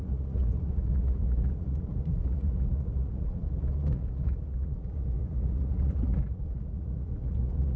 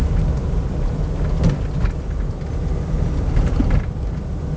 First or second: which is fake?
first